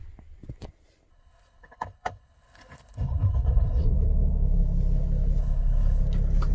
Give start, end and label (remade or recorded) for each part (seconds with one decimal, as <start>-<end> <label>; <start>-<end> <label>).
0.0-1.1 recorded; 1.1-3.8 remade; 3.8-5.4 recorded; 5.4-6.0 remade; 6.0-6.5 recorded